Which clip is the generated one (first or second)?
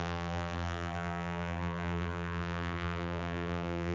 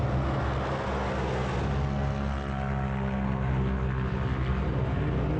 first